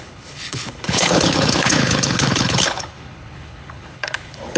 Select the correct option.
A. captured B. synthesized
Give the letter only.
B